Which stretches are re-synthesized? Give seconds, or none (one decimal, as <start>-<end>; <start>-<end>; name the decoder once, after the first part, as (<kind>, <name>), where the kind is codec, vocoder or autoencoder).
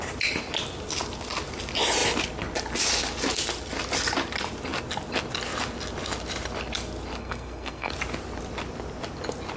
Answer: 7.2-7.9 (codec, SNAC)